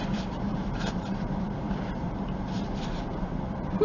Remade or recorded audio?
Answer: remade